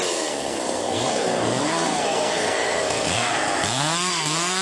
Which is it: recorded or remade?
remade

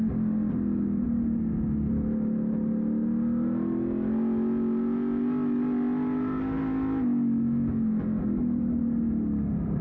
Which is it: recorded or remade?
recorded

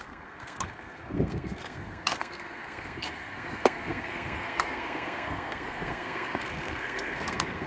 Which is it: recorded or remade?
remade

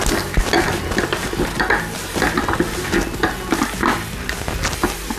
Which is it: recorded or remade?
recorded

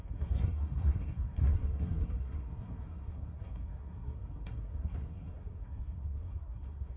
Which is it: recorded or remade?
remade